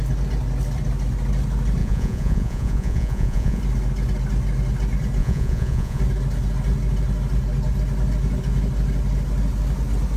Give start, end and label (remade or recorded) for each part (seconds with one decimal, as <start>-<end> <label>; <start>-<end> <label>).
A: 0.0-1.8 recorded; 1.8-3.6 remade; 3.6-5.2 recorded; 5.2-6.0 remade; 6.0-10.2 recorded